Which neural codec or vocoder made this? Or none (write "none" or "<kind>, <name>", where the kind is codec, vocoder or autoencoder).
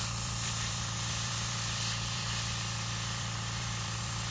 vocoder, BigVGAN v2